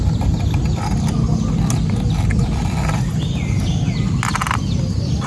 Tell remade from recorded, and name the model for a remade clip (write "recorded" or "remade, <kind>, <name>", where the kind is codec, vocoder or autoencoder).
recorded